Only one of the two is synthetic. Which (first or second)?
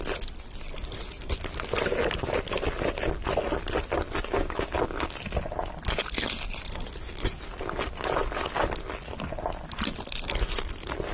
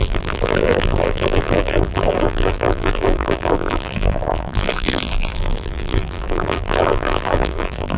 second